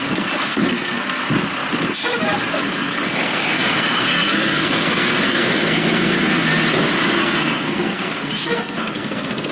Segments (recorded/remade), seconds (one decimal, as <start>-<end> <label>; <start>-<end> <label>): 0.0-1.2 remade; 1.2-2.5 recorded; 2.5-6.5 remade; 6.5-7.2 recorded; 7.2-9.5 remade